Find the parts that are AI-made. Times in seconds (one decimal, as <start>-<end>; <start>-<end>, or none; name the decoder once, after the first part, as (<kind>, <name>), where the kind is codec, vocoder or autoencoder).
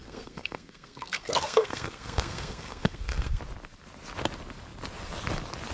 0.0-3.4 (codec, SNAC)